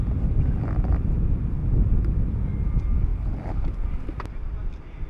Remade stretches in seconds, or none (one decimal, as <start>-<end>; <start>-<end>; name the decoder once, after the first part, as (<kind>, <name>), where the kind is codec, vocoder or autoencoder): none